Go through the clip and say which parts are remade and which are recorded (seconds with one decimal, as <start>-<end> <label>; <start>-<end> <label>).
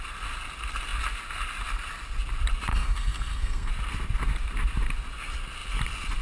0.0-2.7 recorded; 2.7-3.7 remade; 3.7-6.2 recorded